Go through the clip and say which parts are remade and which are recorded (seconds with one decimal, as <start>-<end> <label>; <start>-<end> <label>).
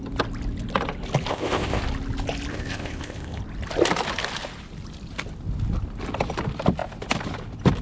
0.0-1.3 recorded; 1.3-1.8 remade; 1.8-2.5 recorded; 2.5-3.4 remade; 3.4-7.8 recorded